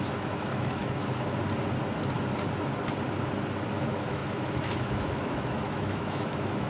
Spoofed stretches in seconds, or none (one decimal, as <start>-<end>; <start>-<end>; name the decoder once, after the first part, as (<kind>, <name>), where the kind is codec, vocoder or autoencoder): 0.0-0.8 (autoencoder, DAC-VAE); 3.7-6.7